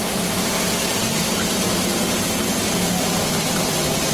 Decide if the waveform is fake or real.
real